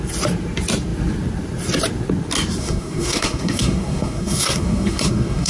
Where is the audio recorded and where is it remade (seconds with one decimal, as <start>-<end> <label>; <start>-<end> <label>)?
0.0-2.6 recorded; 2.6-5.5 remade